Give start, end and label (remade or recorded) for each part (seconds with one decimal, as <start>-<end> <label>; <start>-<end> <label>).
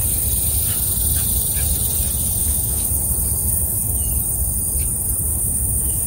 0.0-2.4 recorded; 2.4-2.9 remade; 2.9-3.4 recorded; 3.4-4.0 remade; 4.0-5.3 recorded; 5.3-6.1 remade